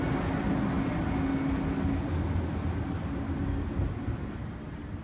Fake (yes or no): no